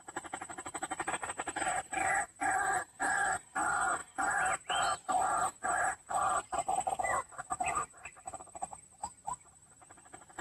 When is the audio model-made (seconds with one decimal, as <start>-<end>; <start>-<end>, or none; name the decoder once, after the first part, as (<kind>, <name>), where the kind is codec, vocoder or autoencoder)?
0.5-2.2 (vocoder, BigVGAN v2); 4.0-9.0